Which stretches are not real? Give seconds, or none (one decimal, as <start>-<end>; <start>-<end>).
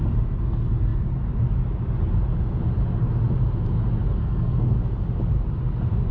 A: 4.2-4.8